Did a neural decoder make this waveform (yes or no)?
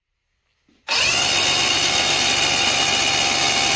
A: no